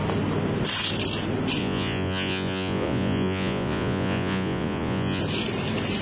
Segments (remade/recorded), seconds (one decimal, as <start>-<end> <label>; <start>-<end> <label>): 0.0-1.6 recorded; 1.6-5.2 remade; 5.2-6.0 recorded